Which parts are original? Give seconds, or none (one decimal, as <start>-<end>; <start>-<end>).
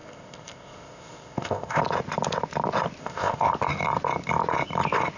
1.8-3.0; 3.5-5.2